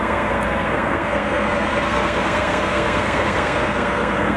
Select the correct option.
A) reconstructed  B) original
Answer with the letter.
A